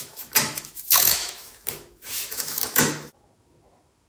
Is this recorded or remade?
remade